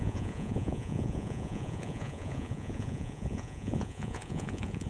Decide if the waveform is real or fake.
fake